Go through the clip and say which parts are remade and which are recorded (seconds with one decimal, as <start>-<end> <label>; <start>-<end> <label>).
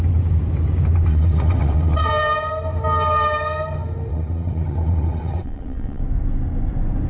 0.0-1.1 recorded; 1.1-2.1 remade; 2.1-4.1 recorded; 4.1-6.0 remade; 6.0-7.1 recorded